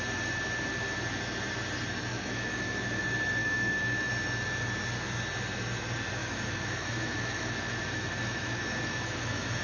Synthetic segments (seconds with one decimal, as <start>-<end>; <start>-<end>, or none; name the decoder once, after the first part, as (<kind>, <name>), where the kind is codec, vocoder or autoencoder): 2.1-3.0 (autoencoder, DAC-VAE); 3.4-4.1; 6.2-9.6